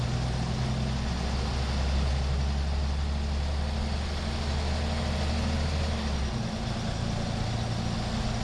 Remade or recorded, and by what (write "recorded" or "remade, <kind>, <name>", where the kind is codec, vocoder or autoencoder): recorded